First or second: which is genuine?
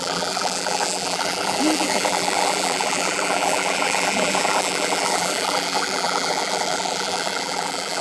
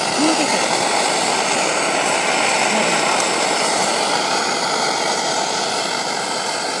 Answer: second